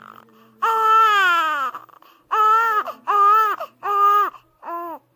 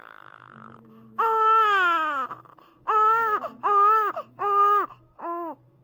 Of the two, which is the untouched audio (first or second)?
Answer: first